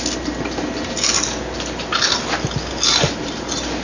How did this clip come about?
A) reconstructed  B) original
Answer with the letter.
B